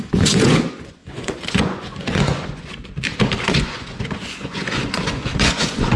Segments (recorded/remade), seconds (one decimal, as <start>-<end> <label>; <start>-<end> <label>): 0.0-2.8 remade; 2.8-3.4 recorded; 3.4-6.0 remade